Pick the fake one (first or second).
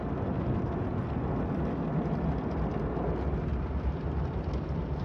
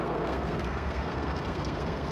second